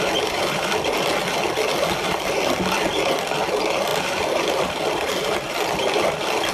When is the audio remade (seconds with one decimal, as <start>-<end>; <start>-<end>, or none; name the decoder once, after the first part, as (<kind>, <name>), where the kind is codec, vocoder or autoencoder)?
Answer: 3.9-6.5 (vocoder, BigVGAN v2)